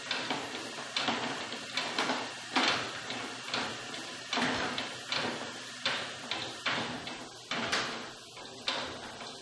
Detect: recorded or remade recorded